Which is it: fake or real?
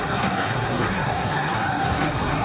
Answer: fake